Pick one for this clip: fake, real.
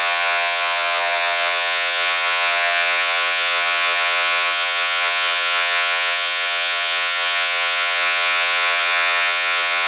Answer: fake